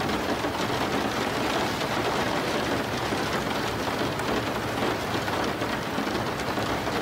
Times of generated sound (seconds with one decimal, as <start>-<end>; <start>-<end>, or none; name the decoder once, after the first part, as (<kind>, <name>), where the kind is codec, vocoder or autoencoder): 0.0-7.0 (vocoder, BigVGAN v2)